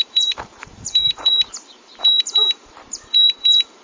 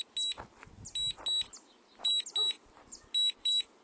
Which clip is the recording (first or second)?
second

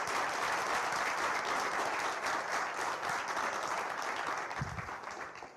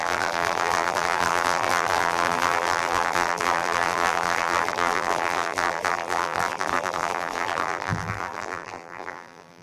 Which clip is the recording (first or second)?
first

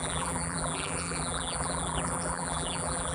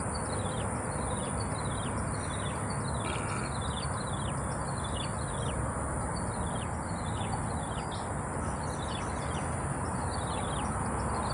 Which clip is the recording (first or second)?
second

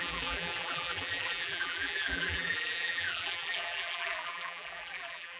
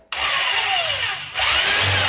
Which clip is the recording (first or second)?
second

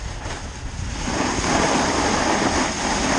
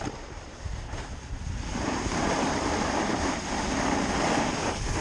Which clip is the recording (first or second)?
first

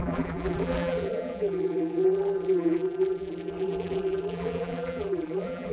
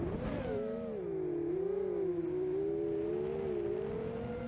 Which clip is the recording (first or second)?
second